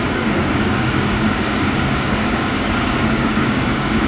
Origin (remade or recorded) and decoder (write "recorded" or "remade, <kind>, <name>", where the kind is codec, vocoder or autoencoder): remade, codec, DAC